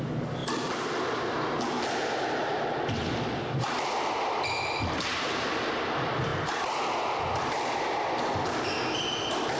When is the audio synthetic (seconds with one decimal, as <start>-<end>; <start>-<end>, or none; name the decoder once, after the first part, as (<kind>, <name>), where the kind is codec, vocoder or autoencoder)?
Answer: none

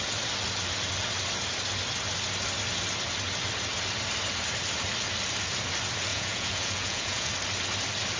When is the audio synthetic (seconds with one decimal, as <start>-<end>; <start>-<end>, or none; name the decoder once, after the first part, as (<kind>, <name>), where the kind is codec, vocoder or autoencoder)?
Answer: 6.1-7.3 (vocoder, Vocos)

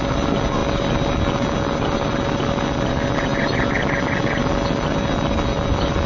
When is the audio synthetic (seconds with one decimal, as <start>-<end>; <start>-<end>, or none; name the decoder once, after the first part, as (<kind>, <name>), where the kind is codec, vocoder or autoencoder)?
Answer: none

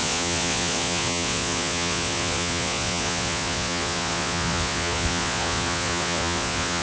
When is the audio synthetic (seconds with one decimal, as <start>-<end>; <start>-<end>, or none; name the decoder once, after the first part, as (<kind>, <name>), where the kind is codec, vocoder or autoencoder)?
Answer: 0.0-6.8 (vocoder, Vocos)

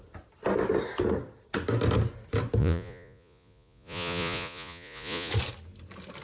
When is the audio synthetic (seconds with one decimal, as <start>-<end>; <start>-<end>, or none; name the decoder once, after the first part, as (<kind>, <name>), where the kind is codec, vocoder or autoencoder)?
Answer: 2.6-5.3 (vocoder, Vocos)

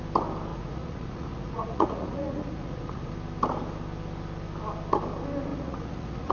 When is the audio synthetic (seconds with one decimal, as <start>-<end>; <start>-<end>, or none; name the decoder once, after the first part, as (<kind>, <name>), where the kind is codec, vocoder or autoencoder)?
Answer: 0.5-3.1 (vocoder, Vocos); 5.5-6.3